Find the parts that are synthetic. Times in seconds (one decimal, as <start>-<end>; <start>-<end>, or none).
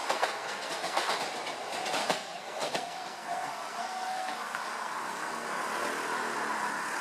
0.0-1.1; 2.0-5.6